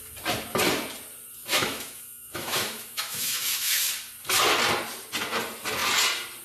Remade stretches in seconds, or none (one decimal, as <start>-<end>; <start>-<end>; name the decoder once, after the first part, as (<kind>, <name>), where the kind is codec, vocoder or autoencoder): 1.4-3.9 (autoencoder, DAC-VAE)